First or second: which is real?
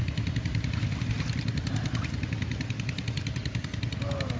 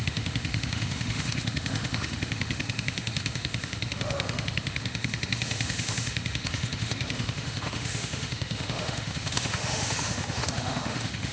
first